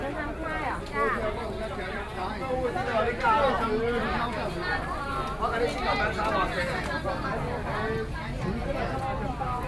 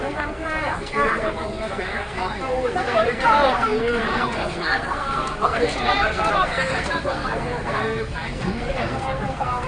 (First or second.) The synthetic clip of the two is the second